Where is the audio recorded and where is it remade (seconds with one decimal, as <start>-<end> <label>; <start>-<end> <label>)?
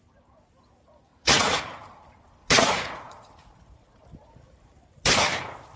0.0-1.1 recorded; 1.1-1.6 remade; 1.6-2.4 recorded; 2.4-4.0 remade; 4.0-5.8 recorded